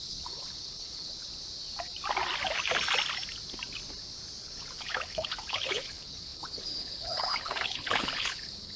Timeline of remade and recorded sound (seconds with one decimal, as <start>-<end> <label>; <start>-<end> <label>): 0.0-1.3 remade; 1.3-4.4 recorded; 4.4-8.8 remade